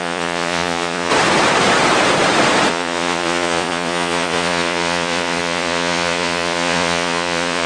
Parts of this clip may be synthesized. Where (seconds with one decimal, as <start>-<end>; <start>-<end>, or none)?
0.0-1.1; 2.7-7.7